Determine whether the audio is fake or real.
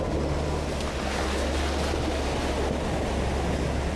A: real